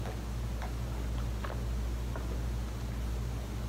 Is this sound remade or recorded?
recorded